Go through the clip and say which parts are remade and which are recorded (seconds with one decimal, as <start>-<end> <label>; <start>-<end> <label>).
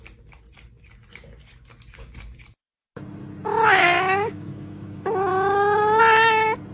0.0-3.8 recorded; 3.8-6.0 remade; 6.0-6.7 recorded